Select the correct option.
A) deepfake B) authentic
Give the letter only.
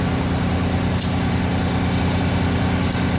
B